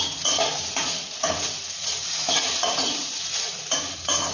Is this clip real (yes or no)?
no